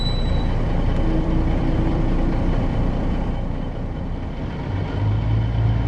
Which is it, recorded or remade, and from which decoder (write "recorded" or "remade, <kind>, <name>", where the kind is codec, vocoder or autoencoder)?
remade, vocoder, BigVGAN v2